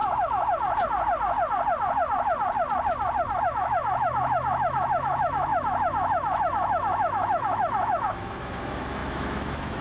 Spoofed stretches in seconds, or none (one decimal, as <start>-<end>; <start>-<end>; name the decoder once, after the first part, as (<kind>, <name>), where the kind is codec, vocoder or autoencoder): 3.4-9.8 (autoencoder, DAC-VAE)